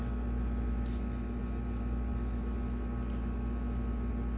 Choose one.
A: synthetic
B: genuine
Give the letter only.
B